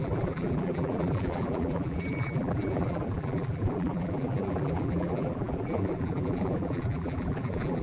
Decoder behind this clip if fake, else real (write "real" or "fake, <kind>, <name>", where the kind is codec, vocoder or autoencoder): fake, vocoder, BigVGAN v2